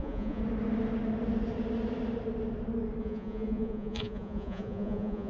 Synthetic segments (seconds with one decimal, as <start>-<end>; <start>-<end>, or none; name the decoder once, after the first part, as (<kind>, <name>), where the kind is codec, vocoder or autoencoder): 0.0-0.4 (vocoder, Vocos); 3.0-5.3